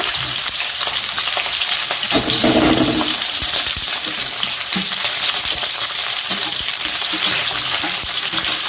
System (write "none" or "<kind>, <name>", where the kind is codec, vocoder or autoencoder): vocoder, BigVGAN v2